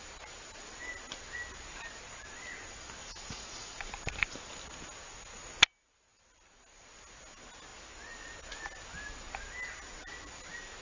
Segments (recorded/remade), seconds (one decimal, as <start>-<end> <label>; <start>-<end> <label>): 0.0-3.0 recorded; 3.0-3.9 remade; 3.9-10.8 recorded